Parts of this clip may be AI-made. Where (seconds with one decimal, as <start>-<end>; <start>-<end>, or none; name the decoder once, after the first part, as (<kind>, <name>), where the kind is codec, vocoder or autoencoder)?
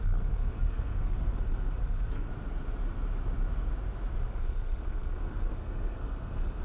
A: 0.0-2.3 (codec, SNAC); 4.3-6.6